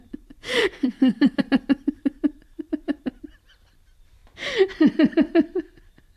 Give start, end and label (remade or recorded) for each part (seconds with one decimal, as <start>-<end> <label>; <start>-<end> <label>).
0.0-0.6 recorded; 0.6-1.4 remade; 1.4-6.2 recorded